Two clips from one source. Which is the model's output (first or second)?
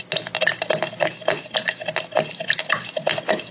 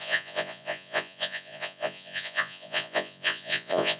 second